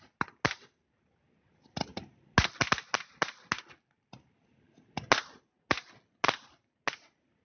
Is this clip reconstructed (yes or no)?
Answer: no